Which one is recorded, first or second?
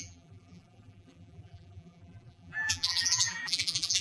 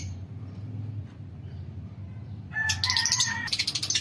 second